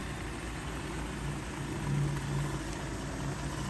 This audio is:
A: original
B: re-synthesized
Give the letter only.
A